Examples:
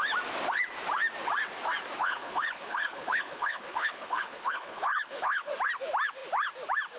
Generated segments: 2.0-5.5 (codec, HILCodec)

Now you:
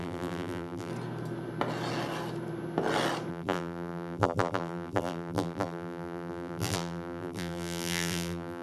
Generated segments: 0.0-0.9 (vocoder, BigVGAN v2); 3.3-8.6